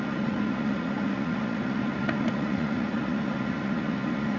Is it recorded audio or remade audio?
remade